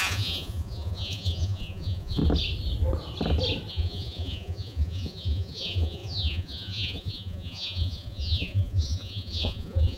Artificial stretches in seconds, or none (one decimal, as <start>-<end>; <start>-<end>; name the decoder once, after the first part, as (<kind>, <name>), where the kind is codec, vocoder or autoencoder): 0.0-2.2 (vocoder, Vocos); 3.7-10.0